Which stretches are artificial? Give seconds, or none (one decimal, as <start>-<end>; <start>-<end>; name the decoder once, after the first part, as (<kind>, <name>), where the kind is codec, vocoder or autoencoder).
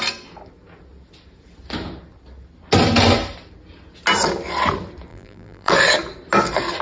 5.1-5.7 (vocoder, BigVGAN v2)